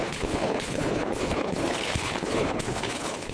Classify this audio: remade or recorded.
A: remade